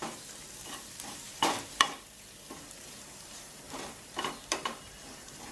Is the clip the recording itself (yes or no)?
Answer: no